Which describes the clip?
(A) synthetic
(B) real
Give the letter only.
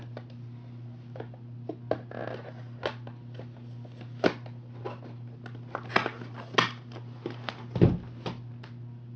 B